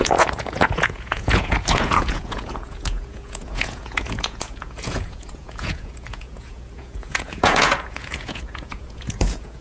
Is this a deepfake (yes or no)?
yes